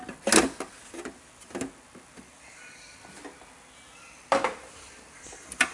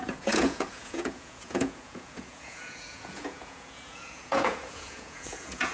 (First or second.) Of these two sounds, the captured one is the first